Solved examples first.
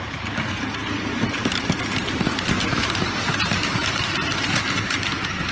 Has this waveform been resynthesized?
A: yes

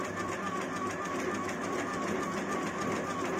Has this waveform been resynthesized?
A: no